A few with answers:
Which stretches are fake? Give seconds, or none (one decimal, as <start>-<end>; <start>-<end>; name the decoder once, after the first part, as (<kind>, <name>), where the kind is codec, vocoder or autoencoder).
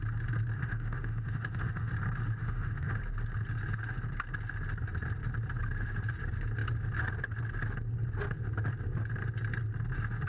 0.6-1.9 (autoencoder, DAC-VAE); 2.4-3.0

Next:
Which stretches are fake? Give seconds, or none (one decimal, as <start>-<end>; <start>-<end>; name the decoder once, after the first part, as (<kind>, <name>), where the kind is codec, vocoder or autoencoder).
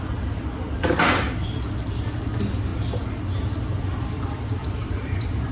4.6-5.5 (vocoder, BigVGAN v2)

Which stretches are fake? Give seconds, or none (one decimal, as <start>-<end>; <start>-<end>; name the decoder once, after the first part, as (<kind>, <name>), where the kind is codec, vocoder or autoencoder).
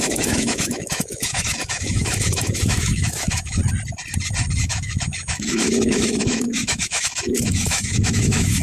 0.0-3.6 (autoencoder, DAC-VAE); 4.6-8.6